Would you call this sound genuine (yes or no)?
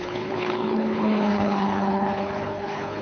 no